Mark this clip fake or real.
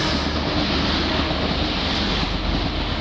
real